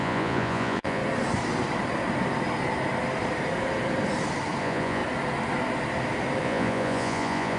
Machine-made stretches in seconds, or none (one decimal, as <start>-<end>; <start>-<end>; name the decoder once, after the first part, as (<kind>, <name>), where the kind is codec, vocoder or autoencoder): 0.0-1.0 (vocoder, Vocos); 4.6-5.0; 6.4-7.6